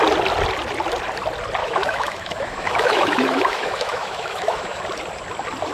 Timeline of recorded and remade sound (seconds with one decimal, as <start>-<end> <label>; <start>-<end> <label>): 0.0-1.6 recorded; 1.6-4.8 remade; 4.8-5.7 recorded